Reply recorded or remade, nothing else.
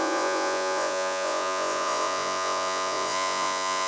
remade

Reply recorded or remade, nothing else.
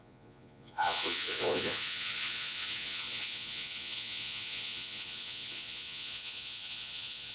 remade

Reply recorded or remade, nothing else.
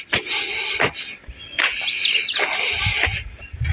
recorded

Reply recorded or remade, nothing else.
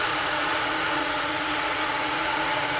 remade